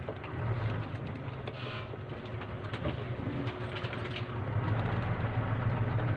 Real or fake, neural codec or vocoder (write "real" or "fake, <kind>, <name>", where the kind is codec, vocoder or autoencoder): real